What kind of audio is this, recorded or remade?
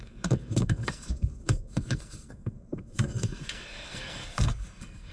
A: remade